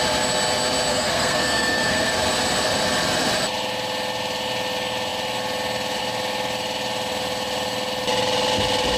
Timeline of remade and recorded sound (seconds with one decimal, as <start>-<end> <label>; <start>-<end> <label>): 0.0-0.9 recorded; 0.9-2.1 remade; 2.1-9.0 recorded